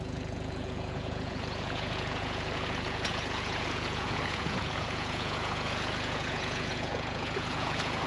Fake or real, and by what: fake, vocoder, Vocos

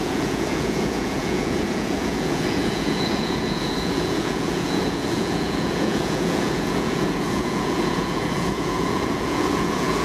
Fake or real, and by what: fake, vocoder, Vocos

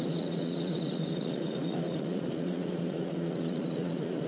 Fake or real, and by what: fake, vocoder, Vocos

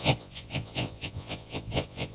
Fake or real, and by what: fake, vocoder, Vocos